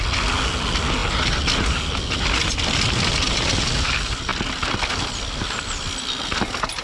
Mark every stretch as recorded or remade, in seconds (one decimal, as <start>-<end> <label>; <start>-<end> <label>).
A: 0.0-6.8 recorded

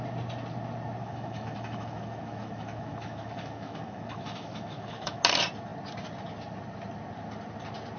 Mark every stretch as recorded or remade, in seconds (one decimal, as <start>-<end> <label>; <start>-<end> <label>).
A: 0.0-1.0 recorded; 1.0-5.2 remade; 5.2-8.0 recorded

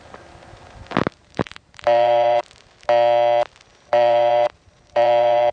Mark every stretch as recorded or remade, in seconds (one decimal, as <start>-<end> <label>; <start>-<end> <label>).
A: 0.0-1.2 recorded; 1.2-2.4 remade; 2.4-3.7 recorded; 3.7-5.5 remade